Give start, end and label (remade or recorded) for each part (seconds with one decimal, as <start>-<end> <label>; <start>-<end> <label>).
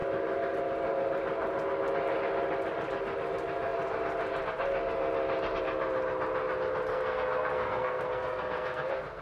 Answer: 0.0-6.9 recorded; 6.9-9.2 remade